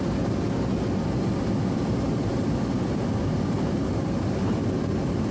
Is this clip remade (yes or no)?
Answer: no